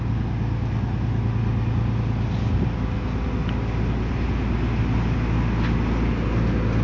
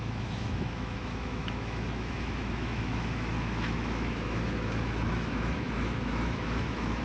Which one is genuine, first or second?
first